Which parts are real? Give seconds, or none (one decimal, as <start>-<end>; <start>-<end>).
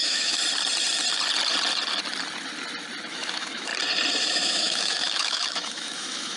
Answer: 0.4-3.1; 3.7-4.2